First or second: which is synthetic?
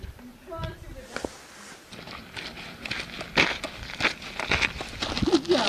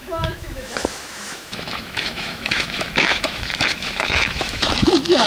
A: second